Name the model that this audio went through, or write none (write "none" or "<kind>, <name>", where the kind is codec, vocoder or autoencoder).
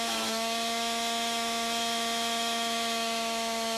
autoencoder, DAC-VAE